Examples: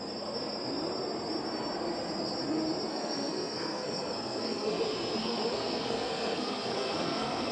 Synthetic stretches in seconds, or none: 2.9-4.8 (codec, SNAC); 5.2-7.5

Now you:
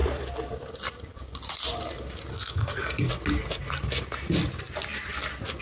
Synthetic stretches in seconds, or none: 2.3-3.1 (codec, SNAC)

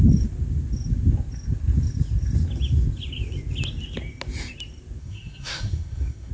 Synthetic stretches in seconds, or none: 5.0-6.3 (codec, SNAC)

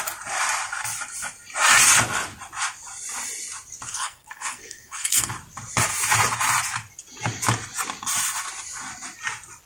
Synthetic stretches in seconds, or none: 3.9-5.3 (codec, SNAC)

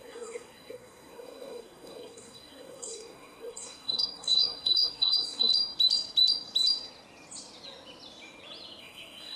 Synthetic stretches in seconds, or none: 0.0-5.5 (codec, SNAC); 8.8-9.4